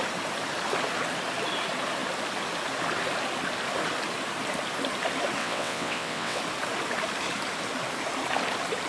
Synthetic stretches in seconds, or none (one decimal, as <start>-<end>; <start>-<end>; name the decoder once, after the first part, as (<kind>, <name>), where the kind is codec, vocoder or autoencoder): 5.4-6.4 (vocoder, WaveNeXt)